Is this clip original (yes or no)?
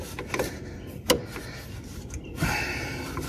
yes